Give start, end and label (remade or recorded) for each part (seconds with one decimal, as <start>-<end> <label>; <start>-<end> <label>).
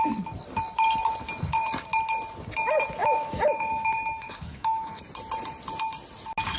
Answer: 0.0-3.0 recorded; 3.0-5.0 remade; 5.0-6.6 recorded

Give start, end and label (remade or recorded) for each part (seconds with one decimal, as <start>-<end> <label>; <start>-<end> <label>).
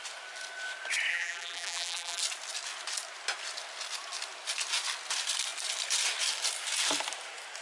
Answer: 0.0-1.1 recorded; 1.1-2.2 remade; 2.2-7.6 recorded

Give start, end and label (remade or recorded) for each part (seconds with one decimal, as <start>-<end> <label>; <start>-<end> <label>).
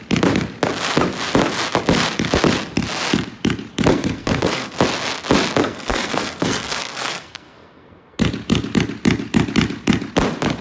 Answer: 0.0-3.9 recorded; 3.9-4.8 remade; 4.8-5.6 recorded; 5.6-8.2 remade; 8.2-10.6 recorded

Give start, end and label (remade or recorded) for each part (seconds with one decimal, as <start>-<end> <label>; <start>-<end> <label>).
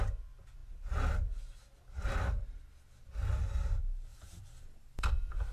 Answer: 0.0-4.1 recorded; 4.1-5.1 remade; 5.1-5.5 recorded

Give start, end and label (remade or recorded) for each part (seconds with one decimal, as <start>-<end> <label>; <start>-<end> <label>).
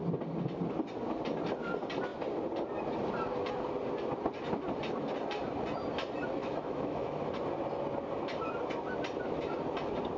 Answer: 0.0-6.4 recorded; 6.4-7.2 remade; 7.2-10.2 recorded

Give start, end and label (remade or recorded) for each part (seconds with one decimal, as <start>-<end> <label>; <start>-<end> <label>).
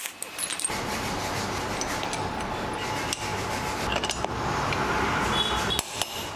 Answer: 0.0-6.4 recorded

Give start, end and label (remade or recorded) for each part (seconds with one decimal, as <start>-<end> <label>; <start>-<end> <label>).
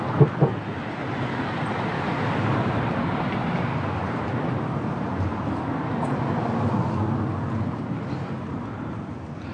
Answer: 0.0-9.5 recorded